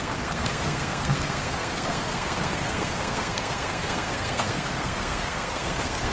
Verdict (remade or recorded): remade